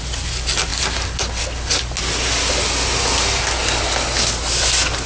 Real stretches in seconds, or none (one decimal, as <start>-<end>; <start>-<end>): 0.0-5.1